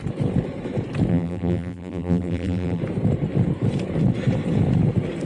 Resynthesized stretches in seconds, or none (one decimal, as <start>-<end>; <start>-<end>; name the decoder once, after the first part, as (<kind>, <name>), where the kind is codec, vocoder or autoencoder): 1.1-2.8 (vocoder, BigVGAN v2)